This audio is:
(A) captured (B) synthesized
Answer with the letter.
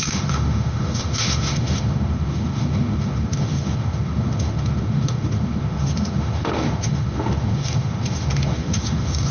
B